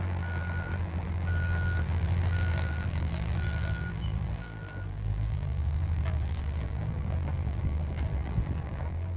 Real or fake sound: fake